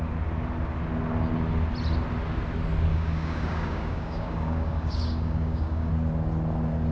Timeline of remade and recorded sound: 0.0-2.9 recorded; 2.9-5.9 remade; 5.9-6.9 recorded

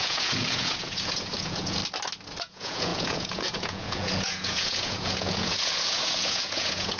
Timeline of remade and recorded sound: 0.0-1.8 remade; 1.8-2.4 recorded; 2.4-7.0 remade

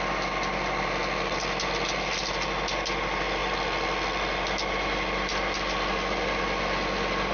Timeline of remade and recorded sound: 0.0-7.3 recorded